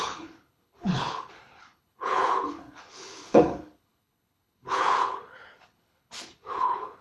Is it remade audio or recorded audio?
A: remade